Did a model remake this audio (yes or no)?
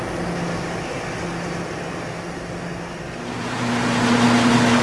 no